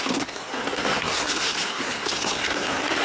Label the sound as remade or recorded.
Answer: remade